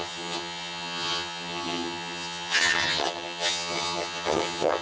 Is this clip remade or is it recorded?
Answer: remade